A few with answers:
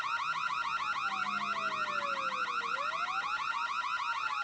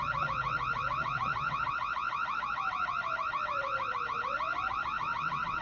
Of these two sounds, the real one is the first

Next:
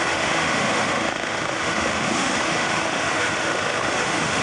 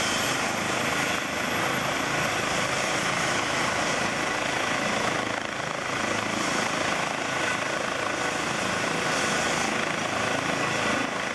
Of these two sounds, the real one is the second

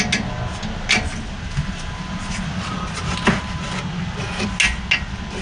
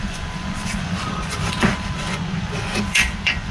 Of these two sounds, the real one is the first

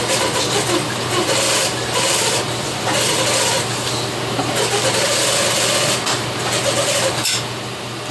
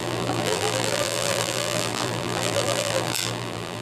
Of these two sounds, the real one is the first